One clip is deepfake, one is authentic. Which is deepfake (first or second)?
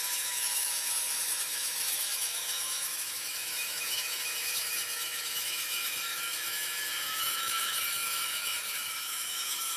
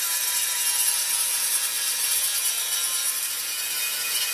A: first